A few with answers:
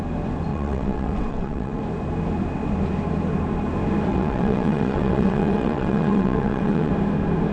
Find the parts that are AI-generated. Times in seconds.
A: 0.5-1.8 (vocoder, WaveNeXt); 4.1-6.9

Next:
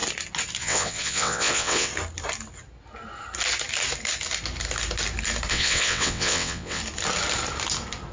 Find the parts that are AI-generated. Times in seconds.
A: 0.6-1.9 (vocoder, WaveNeXt); 5.5-6.8

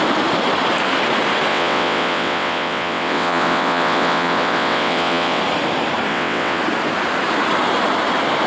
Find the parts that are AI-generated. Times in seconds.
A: 1.5-5.4 (vocoder, WaveNeXt); 6.1-6.6

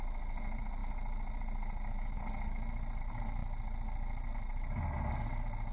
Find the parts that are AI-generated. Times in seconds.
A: none

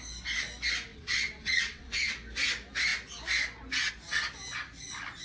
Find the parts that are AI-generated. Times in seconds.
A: 0.9-2.1 (vocoder, WaveNeXt)

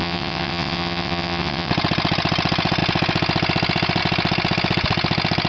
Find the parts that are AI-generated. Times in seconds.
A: 0.0-1.7 (vocoder, WaveNeXt)